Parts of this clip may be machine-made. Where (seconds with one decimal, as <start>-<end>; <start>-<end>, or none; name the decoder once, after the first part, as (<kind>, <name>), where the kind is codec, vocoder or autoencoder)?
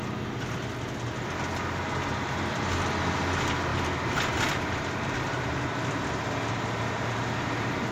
none